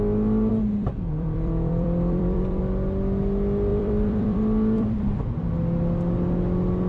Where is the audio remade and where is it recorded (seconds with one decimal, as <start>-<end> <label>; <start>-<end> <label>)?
0.0-0.5 recorded; 0.5-2.6 remade; 2.6-3.7 recorded; 3.7-5.2 remade; 5.2-6.9 recorded